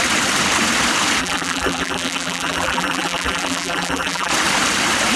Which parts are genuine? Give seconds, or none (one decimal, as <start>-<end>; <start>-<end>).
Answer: 0.0-1.2; 4.3-5.2